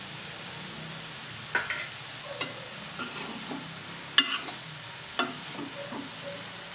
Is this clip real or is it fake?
real